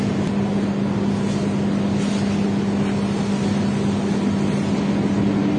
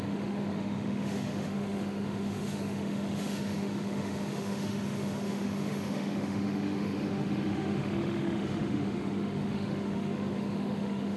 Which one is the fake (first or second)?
second